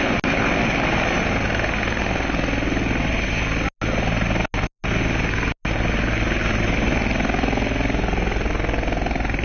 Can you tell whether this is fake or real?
real